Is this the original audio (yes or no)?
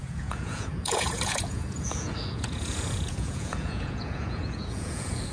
no